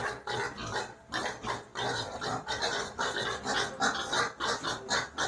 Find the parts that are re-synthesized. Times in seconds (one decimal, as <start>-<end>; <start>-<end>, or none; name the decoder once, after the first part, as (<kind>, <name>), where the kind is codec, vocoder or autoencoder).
none